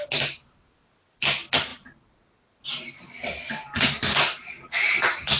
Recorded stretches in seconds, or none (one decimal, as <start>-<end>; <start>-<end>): 0.0-5.4